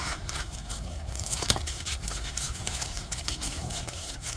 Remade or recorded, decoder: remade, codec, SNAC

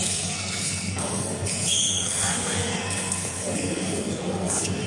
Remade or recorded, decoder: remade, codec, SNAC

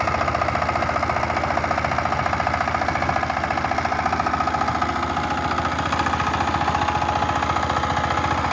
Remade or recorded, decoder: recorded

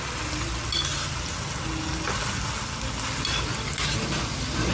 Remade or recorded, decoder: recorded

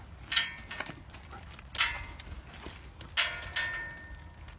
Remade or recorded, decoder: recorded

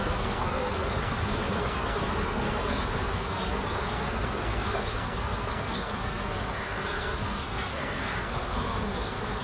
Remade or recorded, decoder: remade, codec, SNAC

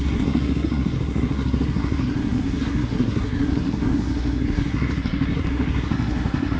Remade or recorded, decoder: remade, codec, SNAC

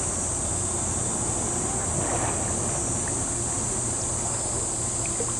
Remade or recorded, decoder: recorded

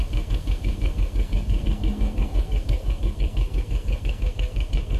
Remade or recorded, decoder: remade, codec, SNAC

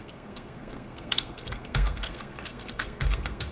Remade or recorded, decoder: remade, codec, SNAC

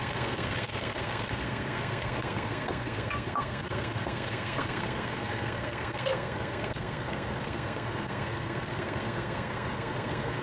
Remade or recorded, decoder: remade, codec, SNAC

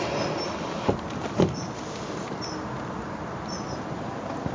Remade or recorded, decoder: recorded